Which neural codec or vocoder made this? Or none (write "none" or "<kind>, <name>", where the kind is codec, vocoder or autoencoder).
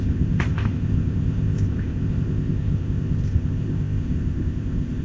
codec, ZipCodec